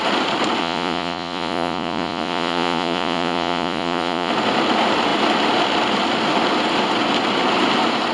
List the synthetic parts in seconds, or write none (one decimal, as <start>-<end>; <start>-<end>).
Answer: 0.6-4.3